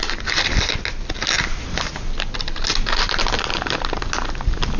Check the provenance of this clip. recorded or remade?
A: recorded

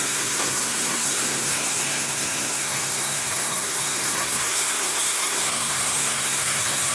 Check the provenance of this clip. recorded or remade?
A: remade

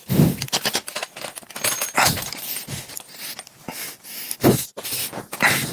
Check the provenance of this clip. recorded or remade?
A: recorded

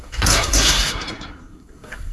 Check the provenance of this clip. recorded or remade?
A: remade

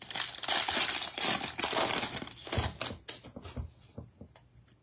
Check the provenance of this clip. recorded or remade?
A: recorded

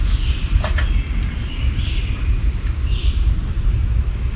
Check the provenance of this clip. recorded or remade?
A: recorded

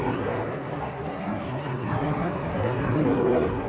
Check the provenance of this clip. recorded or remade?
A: remade